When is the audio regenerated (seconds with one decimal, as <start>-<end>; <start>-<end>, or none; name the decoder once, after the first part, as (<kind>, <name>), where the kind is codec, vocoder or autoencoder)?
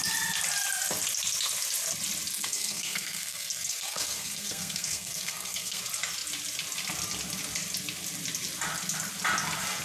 2.3-5.8 (codec, SNAC)